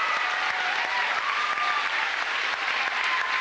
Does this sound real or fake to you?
real